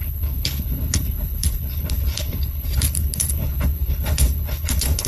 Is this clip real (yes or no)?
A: no